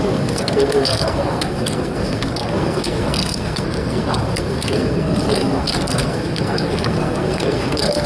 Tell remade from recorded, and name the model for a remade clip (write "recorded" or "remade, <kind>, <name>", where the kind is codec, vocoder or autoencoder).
remade, codec, SNAC